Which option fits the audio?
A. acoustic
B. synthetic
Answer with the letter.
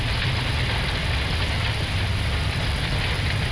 A